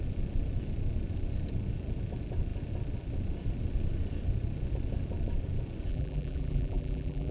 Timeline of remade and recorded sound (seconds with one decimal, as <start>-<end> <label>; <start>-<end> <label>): 0.0-5.9 recorded; 5.9-7.3 remade